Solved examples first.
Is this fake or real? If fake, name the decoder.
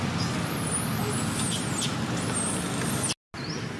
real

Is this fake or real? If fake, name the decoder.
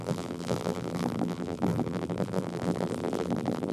fake, vocoder, BigVGAN v2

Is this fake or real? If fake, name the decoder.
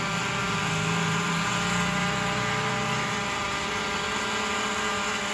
real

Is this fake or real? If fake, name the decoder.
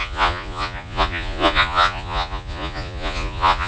fake, vocoder, Vocos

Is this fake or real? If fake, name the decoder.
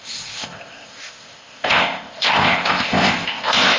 fake, codec, ZipCodec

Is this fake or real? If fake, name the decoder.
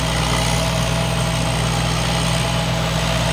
real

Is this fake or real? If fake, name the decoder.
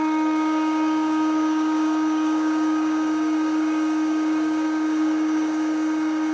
fake, codec, DAC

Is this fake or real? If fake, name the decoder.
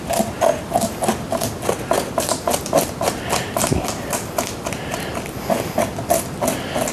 real